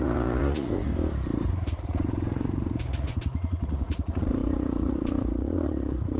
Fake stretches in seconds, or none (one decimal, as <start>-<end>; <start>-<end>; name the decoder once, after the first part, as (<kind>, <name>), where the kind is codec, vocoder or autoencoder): 0.0-0.9 (vocoder, Vocos); 1.5-6.2